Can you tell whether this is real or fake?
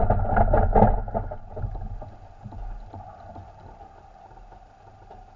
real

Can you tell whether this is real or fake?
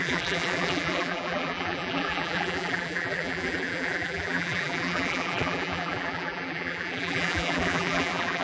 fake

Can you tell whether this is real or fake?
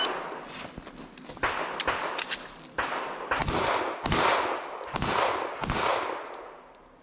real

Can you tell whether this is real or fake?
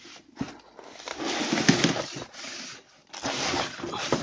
real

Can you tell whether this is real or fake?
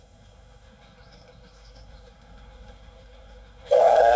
fake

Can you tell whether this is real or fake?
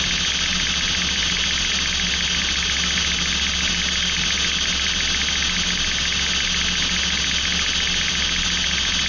real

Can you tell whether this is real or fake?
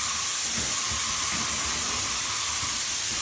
fake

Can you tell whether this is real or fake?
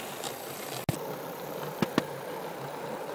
real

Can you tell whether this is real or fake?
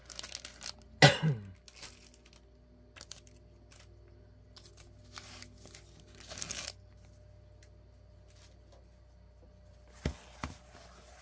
real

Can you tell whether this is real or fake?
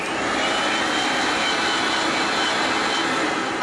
real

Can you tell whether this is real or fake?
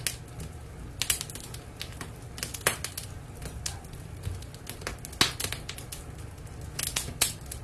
real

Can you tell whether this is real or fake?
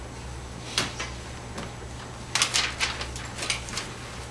real